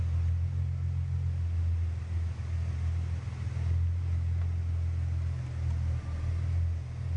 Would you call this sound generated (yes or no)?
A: no